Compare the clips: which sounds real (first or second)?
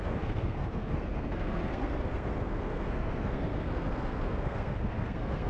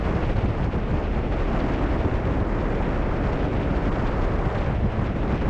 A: second